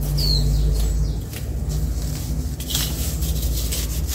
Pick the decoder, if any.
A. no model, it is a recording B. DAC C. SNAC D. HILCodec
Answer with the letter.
A